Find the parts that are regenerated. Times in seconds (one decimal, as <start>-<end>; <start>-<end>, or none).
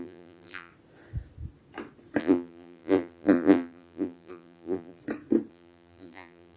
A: 0.0-0.7; 2.2-5.0; 5.5-6.6